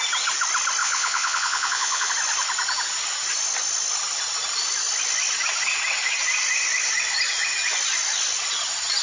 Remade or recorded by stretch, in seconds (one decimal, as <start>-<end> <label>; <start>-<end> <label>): 0.0-0.8 recorded; 0.8-2.1 remade; 2.1-9.0 recorded